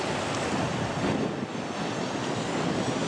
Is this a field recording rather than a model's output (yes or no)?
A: yes